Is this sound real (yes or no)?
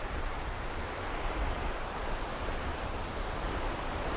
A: no